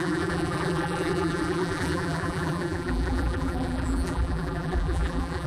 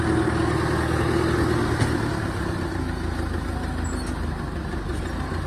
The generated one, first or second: first